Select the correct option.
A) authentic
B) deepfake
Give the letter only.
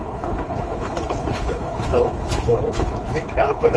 B